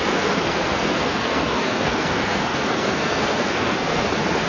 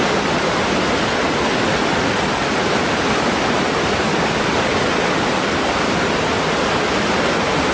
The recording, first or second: second